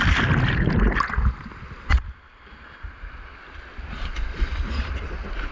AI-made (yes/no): no